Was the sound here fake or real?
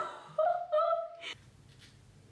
real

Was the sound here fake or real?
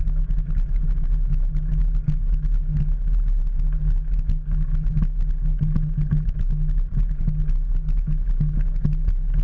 real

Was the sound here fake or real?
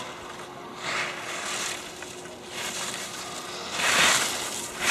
real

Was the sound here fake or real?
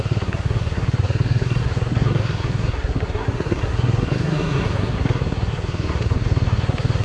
fake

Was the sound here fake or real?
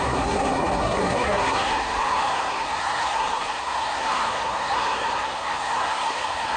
fake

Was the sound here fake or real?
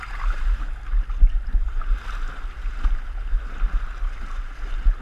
real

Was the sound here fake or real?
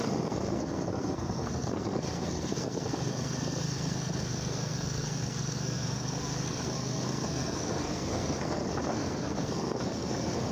fake